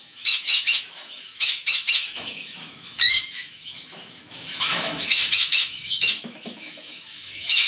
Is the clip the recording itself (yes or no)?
no